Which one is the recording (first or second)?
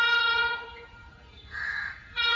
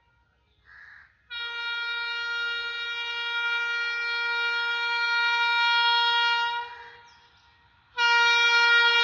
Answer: second